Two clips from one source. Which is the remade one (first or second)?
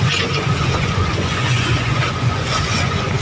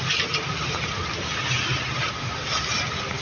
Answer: first